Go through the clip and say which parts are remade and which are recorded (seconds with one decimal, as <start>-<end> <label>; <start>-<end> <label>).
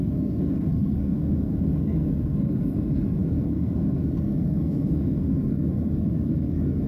0.0-6.9 remade